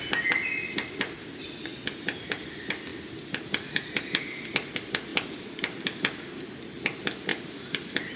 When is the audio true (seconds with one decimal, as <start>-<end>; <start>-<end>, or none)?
0.0-2.9; 4.0-7.3